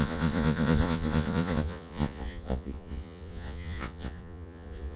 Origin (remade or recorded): remade